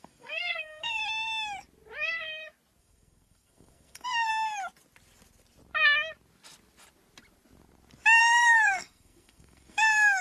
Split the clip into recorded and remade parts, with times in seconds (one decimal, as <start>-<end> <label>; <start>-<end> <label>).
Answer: 0.0-1.0 remade; 1.0-2.8 recorded; 2.8-4.3 remade; 4.3-8.2 recorded; 8.2-10.2 remade